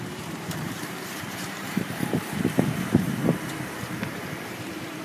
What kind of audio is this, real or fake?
fake